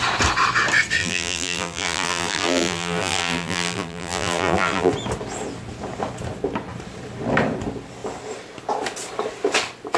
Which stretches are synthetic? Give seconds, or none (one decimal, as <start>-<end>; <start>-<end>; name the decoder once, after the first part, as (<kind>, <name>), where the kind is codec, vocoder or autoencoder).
1.0-4.9 (vocoder, BigVGAN v2)